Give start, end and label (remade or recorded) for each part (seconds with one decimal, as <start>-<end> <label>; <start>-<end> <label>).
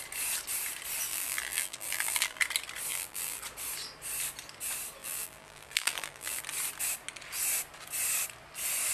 0.0-1.1 recorded; 1.1-2.4 remade; 2.4-2.9 recorded; 2.9-3.4 remade; 3.4-5.0 recorded; 5.0-6.4 remade; 6.4-8.9 recorded